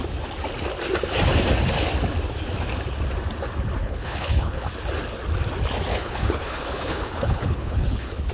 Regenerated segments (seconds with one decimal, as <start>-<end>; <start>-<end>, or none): 3.8-4.7; 5.9-8.3